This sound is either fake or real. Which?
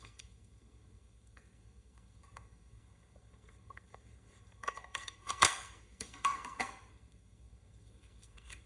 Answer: fake